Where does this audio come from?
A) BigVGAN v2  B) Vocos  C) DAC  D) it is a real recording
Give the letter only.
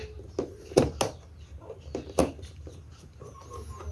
D